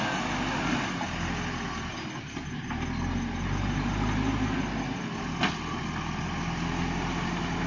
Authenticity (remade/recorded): recorded